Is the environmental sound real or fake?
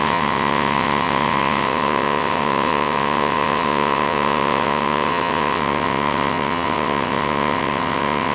fake